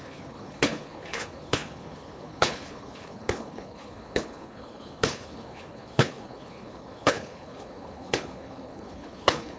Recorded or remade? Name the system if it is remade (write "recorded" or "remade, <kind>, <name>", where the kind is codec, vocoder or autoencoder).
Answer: remade, codec, HILCodec